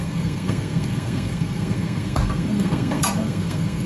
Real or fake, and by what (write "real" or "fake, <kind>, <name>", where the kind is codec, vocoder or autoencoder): fake, codec, SNAC